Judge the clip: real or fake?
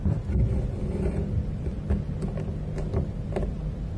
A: real